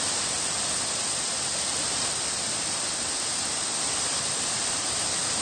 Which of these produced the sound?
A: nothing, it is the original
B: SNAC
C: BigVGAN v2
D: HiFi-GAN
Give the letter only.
C